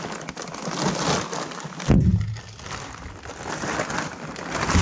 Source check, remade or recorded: recorded